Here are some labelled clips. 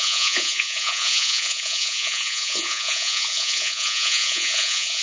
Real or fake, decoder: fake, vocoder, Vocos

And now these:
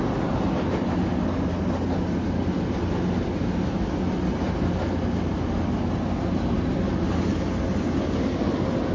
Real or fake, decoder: real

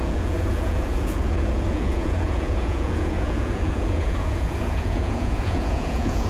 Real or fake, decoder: fake, vocoder, Vocos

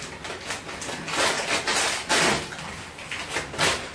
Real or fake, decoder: real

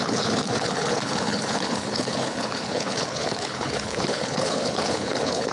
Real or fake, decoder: fake, codec, HILCodec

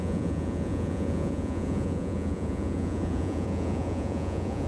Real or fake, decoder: fake, vocoder, Vocos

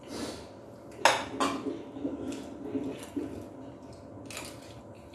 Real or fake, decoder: real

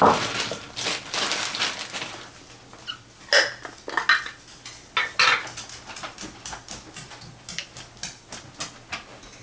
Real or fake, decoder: real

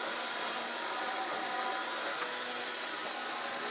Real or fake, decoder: real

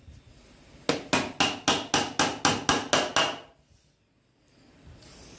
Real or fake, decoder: real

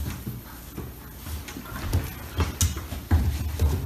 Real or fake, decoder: real